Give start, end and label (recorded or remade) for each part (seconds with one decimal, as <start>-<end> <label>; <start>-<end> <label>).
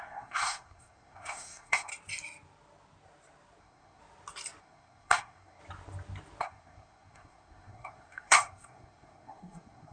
0.0-1.9 remade; 1.9-3.6 recorded; 3.6-4.0 remade; 4.0-4.6 recorded; 4.6-5.6 remade; 5.6-6.4 recorded; 6.4-9.9 remade